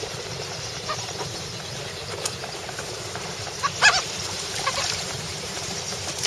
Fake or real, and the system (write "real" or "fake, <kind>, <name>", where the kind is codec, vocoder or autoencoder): fake, vocoder, BigVGAN v2